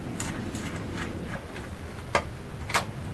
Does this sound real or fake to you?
real